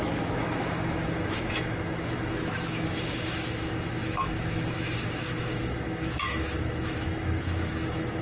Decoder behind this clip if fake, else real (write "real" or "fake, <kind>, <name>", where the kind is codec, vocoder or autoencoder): fake, autoencoder, DAC-VAE